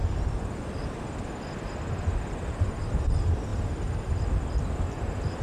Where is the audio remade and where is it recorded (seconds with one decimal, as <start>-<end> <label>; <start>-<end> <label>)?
0.0-5.4 recorded